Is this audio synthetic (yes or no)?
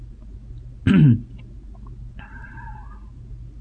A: no